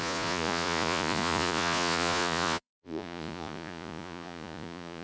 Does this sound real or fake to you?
fake